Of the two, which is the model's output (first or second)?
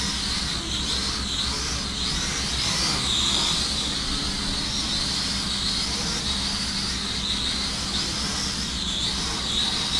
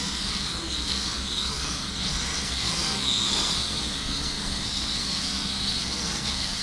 second